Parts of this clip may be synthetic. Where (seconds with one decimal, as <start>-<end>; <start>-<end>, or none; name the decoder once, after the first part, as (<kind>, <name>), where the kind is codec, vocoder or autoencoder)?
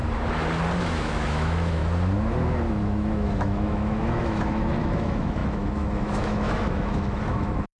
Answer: 0.8-1.8 (autoencoder, DAC-VAE); 2.7-7.8